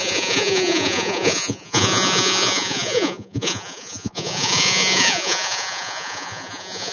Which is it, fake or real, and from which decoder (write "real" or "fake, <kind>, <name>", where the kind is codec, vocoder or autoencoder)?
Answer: fake, vocoder, Vocos